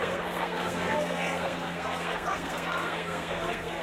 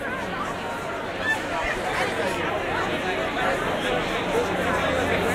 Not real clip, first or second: first